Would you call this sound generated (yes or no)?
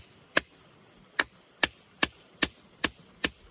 no